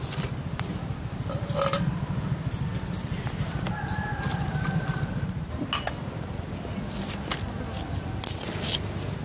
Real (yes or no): yes